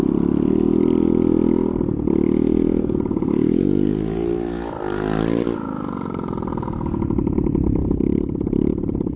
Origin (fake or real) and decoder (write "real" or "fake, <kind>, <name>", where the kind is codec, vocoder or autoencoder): real